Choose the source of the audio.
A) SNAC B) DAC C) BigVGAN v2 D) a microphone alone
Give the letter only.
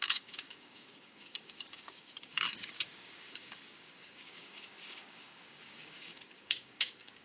B